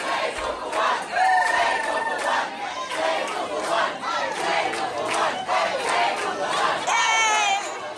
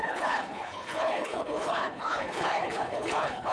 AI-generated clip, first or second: second